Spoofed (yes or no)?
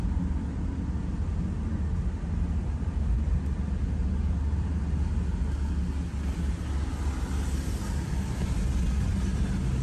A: no